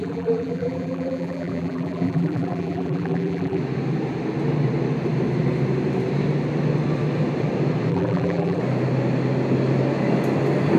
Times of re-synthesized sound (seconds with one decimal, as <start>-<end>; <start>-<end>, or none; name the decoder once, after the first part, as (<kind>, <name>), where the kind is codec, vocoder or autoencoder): 0.0-3.6 (vocoder, BigVGAN v2); 7.9-8.6